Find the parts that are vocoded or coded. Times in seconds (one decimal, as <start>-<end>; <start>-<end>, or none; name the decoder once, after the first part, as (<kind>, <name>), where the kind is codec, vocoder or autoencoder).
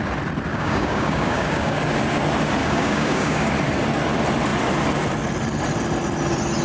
0.5-1.8 (codec, DAC); 2.6-3.5